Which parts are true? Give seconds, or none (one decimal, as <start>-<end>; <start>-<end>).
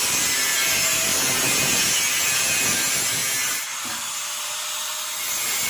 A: 0.0-5.7